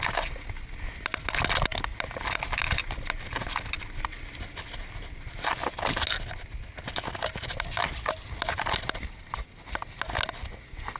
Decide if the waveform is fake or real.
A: real